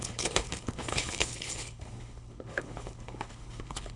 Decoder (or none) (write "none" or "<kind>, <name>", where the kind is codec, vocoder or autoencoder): codec, HILCodec